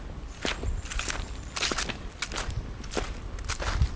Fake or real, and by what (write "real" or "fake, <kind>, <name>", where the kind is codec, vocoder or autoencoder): real